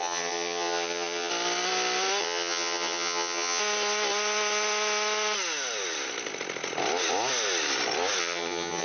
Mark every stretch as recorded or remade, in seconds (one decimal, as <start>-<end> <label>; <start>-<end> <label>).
0.0-1.3 remade; 1.3-2.2 recorded; 2.2-3.6 remade; 3.6-8.2 recorded; 8.2-8.8 remade